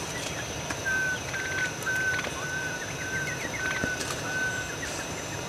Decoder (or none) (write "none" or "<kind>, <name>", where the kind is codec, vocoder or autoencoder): none